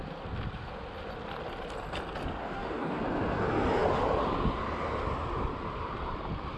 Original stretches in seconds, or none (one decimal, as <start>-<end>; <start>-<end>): 0.0-2.4; 3.0-6.6